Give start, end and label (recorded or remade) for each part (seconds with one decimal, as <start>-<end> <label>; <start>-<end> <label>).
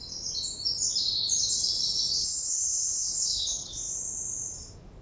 0.0-2.2 recorded; 2.2-3.7 remade; 3.7-5.0 recorded